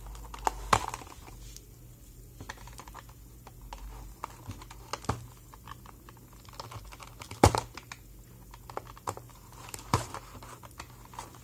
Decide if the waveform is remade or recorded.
recorded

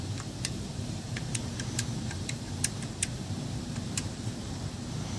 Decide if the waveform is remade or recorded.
remade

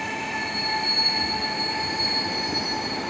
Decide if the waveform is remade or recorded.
recorded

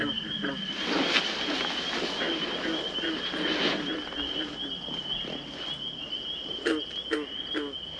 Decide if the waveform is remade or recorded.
recorded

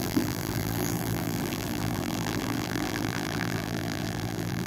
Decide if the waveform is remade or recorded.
remade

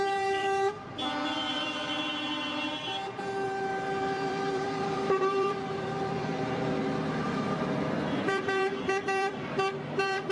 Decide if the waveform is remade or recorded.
remade